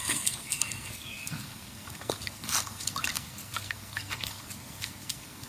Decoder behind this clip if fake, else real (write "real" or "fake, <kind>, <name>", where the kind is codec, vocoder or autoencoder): fake, codec, SNAC